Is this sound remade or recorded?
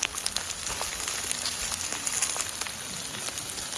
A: recorded